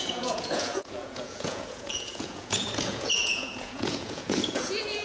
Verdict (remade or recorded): remade